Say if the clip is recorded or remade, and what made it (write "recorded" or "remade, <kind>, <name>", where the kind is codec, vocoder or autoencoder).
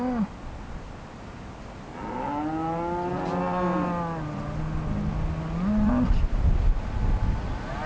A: recorded